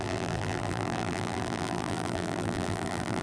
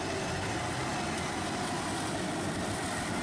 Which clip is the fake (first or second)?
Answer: first